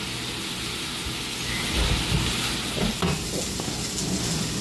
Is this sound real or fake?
real